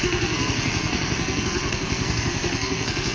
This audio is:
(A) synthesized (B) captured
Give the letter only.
A